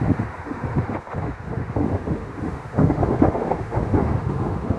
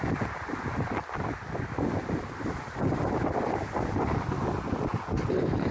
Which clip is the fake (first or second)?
first